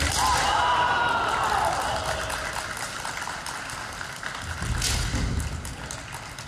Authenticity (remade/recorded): recorded